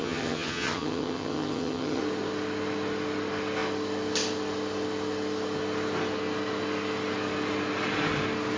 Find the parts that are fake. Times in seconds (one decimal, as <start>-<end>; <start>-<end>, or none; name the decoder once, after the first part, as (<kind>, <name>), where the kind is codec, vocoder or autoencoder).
0.0-2.0 (vocoder, HiFi-GAN)